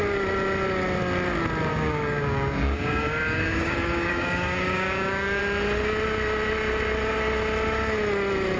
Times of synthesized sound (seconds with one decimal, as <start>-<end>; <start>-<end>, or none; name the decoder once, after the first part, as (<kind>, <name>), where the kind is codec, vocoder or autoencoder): 1.7-5.4 (codec, DAC)